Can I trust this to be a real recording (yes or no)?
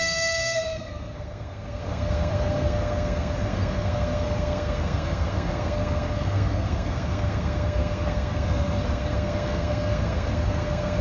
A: no